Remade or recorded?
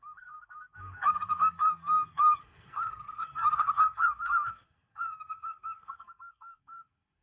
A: remade